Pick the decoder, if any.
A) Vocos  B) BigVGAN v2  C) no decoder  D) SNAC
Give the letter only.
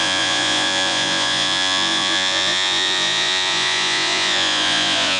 A